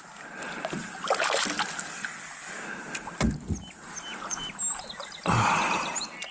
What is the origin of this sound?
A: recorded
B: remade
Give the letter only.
A